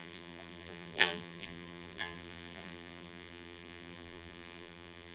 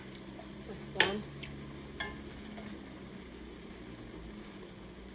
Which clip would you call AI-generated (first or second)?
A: first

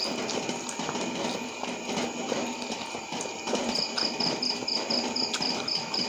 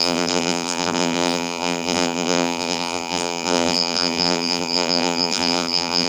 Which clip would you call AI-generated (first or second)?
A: second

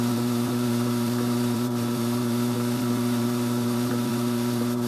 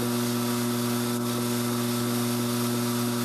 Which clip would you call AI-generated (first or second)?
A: first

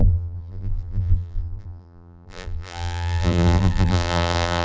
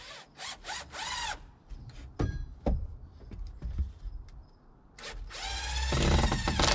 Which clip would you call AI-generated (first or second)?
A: first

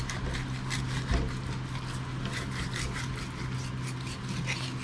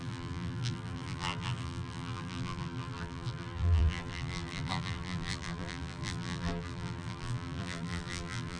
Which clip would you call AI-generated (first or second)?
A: second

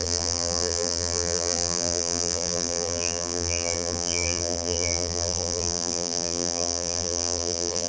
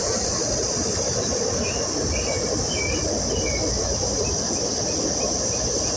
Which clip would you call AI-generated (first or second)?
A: first